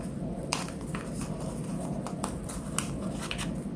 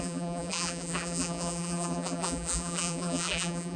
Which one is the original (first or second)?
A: first